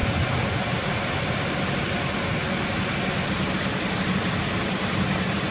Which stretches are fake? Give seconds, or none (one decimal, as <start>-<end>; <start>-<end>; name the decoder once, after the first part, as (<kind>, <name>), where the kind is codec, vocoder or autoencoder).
none